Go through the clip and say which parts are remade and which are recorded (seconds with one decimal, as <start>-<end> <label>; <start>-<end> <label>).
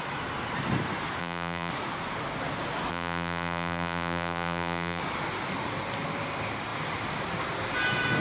0.0-1.2 recorded; 1.2-1.7 remade; 1.7-2.9 recorded; 2.9-5.0 remade; 5.0-8.2 recorded